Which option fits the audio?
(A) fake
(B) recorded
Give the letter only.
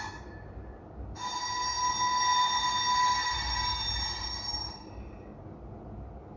B